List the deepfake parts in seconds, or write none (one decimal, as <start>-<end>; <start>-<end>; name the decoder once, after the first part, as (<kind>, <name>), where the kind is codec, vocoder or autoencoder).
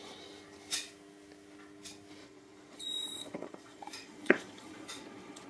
2.2-5.5 (vocoder, Vocos)